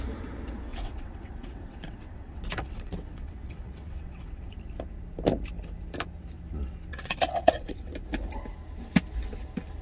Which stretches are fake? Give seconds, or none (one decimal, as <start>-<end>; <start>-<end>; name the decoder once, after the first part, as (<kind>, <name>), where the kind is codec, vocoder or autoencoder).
0.7-4.6 (vocoder, WaveNeXt); 6.9-7.9